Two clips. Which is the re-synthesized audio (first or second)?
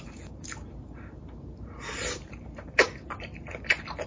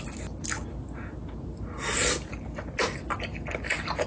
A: first